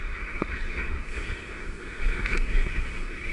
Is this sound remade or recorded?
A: remade